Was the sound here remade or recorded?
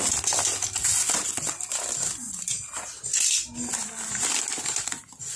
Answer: recorded